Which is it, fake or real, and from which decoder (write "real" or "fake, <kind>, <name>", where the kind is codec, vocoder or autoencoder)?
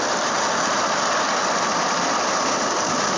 fake, vocoder, BigVGAN v2